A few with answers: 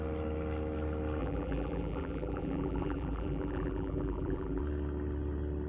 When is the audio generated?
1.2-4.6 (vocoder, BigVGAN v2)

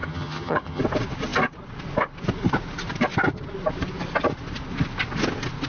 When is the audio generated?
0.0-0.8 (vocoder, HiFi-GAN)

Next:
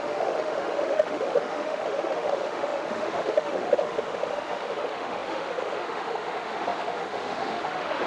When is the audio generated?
0.0-8.1 (autoencoder, DAC-VAE)

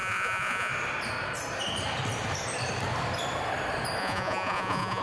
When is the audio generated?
0.0-0.7 (vocoder, Vocos); 4.0-5.0

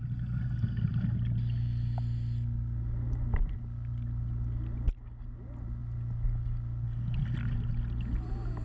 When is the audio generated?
none

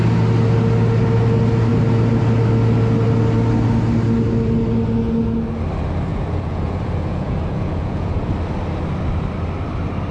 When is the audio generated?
6.1-8.3 (vocoder, Vocos)

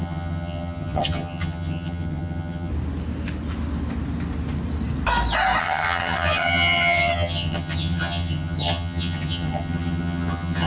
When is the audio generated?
0.0-2.7 (vocoder, HiFi-GAN); 5.6-10.7

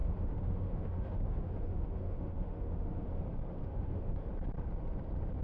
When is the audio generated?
0.0-3.2 (autoencoder, DAC-VAE); 3.6-4.3